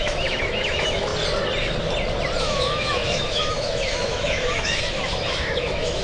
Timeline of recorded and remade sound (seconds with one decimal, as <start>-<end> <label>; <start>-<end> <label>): 0.0-1.1 remade; 1.1-2.4 recorded; 2.4-6.0 remade